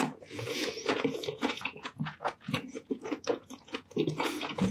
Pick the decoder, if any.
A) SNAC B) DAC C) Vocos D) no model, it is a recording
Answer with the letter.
C